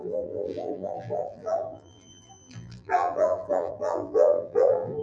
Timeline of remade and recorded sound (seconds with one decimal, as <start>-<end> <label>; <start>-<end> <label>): 0.0-5.0 remade

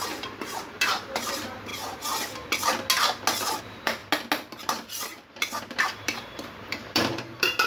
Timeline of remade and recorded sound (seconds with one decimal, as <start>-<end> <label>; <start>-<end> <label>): 0.0-1.7 remade; 1.7-3.6 recorded; 3.6-4.0 remade; 4.0-4.7 recorded; 4.7-7.7 remade